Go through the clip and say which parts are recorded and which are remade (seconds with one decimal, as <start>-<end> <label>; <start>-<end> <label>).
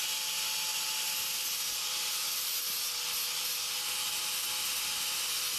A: 0.0-5.6 recorded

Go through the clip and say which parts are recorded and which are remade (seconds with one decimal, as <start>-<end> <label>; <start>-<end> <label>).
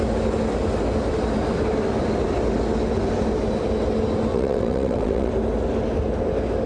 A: 0.0-4.3 recorded; 4.3-5.3 remade; 5.3-6.7 recorded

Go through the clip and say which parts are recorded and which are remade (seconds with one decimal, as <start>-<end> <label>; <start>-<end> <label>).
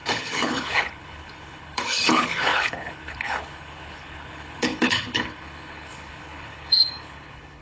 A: 0.0-7.6 remade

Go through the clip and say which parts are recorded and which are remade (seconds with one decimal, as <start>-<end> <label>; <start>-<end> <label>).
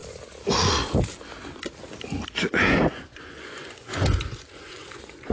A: 0.0-2.5 recorded; 2.5-5.3 remade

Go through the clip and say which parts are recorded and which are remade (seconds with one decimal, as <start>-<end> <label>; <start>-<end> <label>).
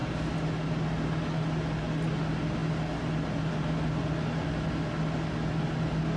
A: 0.0-6.2 recorded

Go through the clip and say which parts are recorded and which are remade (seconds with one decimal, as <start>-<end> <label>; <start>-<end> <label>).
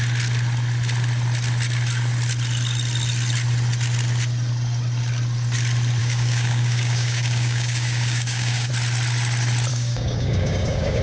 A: 0.0-6.0 recorded; 6.0-8.7 remade; 8.7-9.7 recorded; 9.7-11.0 remade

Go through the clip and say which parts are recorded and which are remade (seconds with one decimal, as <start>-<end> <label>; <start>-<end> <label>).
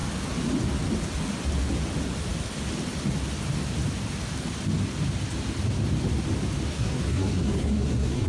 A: 0.0-6.7 recorded; 6.7-8.3 remade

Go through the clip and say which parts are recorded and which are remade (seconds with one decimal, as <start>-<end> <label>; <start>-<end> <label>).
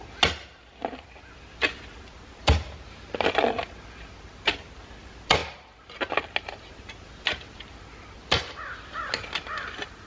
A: 0.0-10.1 recorded